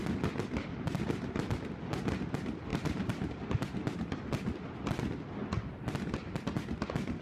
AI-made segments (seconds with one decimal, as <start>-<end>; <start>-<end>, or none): 2.7-3.8